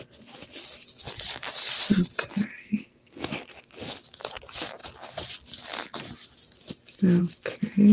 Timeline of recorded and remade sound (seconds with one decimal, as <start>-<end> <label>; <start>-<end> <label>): 0.0-2.6 recorded; 2.6-3.1 remade; 3.1-7.9 recorded